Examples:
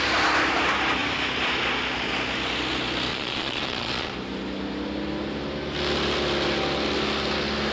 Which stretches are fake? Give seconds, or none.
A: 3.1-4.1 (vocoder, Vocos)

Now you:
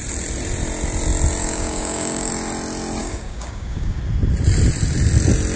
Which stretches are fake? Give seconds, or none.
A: 1.4-2.3 (codec, DAC); 3.0-4.0

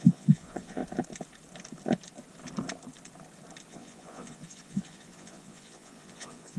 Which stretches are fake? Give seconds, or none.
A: 0.0-0.8 (vocoder, Vocos); 3.7-6.6

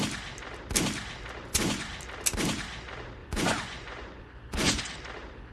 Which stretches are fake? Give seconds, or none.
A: 1.4-1.9 (vocoder, Vocos); 3.2-4.8